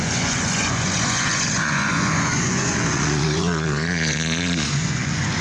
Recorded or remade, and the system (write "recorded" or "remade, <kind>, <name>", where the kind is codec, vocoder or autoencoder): remade, vocoder, Vocos